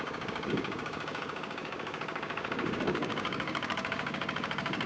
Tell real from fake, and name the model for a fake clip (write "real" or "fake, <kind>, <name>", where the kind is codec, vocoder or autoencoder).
fake, codec, DAC